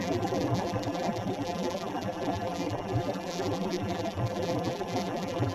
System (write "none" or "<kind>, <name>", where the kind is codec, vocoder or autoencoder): vocoder, BigVGAN v2